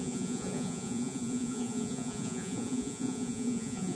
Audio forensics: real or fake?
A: fake